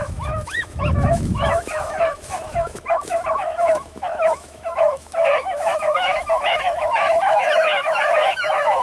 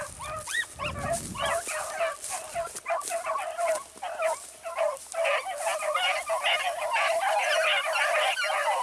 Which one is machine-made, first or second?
first